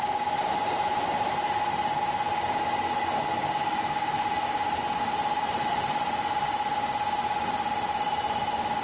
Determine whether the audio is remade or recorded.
recorded